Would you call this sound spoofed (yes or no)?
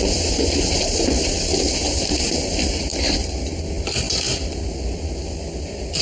yes